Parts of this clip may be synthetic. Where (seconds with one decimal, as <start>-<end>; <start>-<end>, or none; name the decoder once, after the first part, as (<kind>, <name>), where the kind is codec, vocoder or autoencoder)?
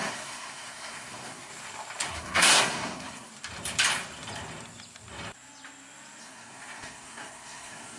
0.0-1.5 (codec, SNAC); 2.0-3.3; 6.2-8.0